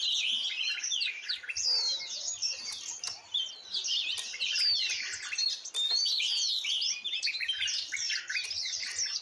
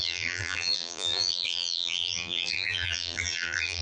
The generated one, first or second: second